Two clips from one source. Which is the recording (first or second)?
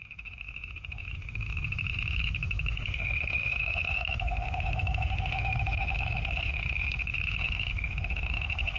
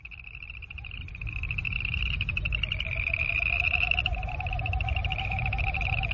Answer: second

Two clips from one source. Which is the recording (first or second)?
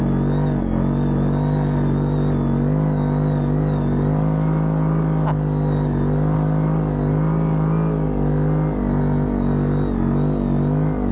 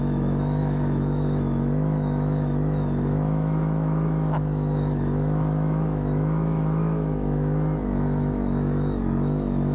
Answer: first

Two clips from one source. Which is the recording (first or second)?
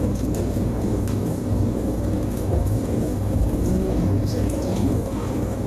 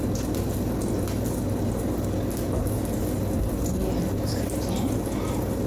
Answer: second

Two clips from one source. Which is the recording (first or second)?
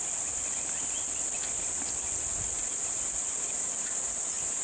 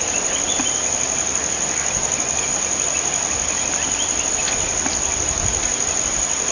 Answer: second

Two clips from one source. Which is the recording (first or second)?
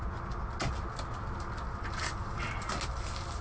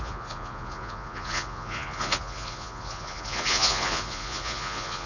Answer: first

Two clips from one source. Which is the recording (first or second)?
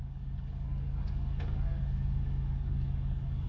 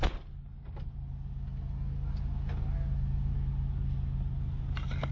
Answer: second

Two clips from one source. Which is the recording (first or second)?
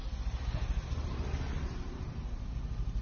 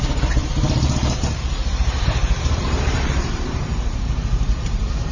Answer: first